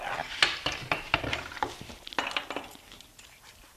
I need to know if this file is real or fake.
real